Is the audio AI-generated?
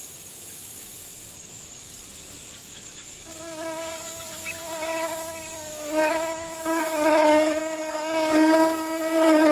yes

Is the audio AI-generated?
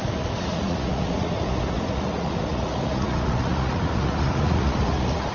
yes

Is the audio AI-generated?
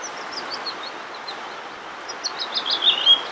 no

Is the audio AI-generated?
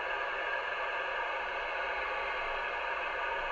no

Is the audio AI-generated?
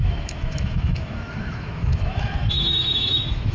yes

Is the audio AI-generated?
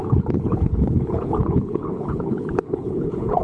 yes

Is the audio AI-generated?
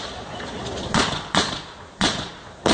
yes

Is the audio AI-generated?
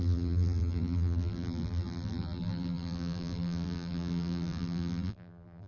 yes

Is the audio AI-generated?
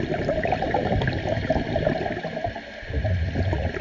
no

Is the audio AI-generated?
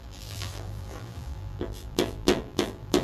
yes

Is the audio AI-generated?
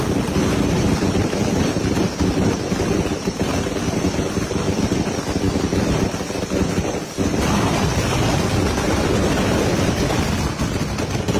no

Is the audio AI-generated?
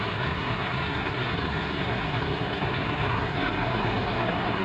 yes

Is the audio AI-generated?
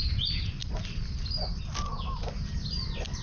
no